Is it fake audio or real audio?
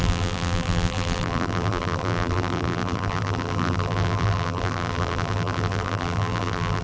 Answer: fake